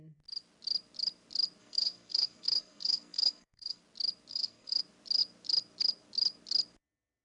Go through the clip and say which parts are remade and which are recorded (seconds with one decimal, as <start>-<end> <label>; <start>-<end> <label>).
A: 0.0-1.6 recorded; 1.6-3.8 remade; 3.8-4.3 recorded; 4.3-4.8 remade; 4.8-7.2 recorded